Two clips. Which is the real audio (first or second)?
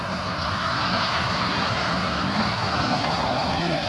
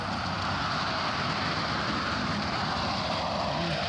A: second